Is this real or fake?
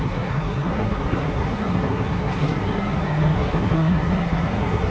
fake